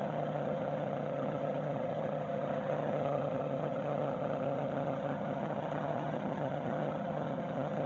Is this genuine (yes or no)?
no